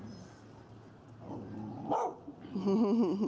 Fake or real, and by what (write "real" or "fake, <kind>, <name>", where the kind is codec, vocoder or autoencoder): real